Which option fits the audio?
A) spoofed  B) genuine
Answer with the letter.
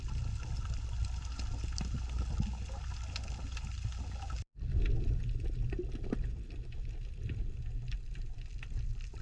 B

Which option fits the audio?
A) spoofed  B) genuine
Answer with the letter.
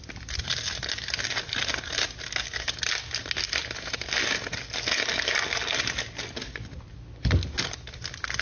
B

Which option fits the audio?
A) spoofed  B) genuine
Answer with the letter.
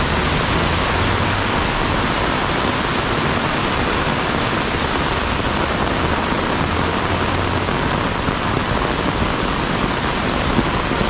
B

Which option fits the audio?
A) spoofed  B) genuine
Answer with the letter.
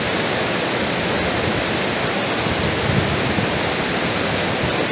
B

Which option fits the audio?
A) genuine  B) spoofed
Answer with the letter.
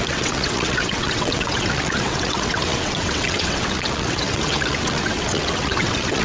B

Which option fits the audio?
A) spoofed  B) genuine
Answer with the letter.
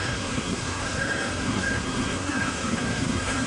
A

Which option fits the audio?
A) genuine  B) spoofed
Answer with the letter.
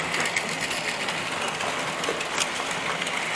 A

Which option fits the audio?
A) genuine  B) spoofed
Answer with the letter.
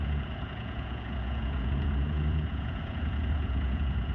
B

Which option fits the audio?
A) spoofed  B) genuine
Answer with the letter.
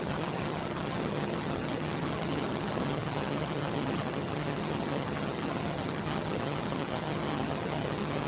A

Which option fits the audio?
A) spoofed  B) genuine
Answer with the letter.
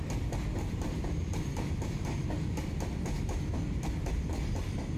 B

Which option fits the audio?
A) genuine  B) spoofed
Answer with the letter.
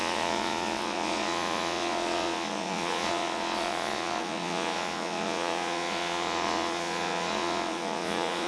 B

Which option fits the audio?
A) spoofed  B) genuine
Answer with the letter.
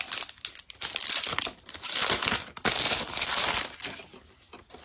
B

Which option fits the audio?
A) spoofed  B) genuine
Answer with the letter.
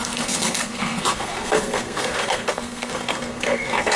A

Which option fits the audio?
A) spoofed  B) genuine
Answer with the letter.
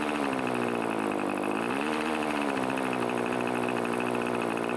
B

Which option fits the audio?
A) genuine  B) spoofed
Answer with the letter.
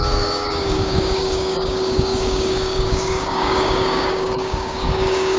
B